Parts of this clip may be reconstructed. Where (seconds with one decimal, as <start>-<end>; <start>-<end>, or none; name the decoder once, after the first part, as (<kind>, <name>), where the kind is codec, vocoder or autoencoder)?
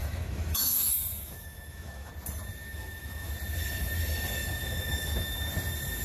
0.0-2.1 (autoencoder, DAC-VAE); 2.6-3.3; 4.4-5.5